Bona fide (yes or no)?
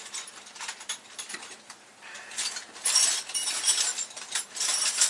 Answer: no